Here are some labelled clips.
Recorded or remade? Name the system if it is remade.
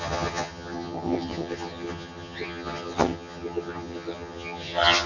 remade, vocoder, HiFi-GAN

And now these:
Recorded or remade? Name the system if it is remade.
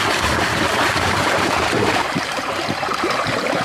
remade, vocoder, BigVGAN v2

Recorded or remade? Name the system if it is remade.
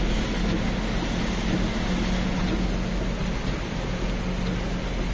recorded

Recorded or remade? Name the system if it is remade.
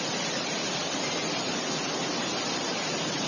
recorded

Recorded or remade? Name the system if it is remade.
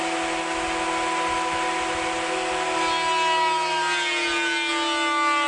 recorded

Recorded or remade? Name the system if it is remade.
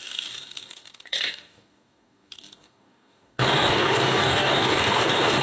remade, codec, DAC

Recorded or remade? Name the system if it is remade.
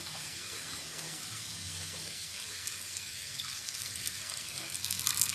remade, codec, SNAC